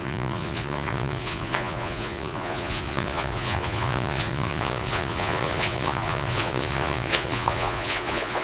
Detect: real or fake fake